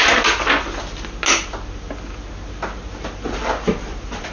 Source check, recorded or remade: recorded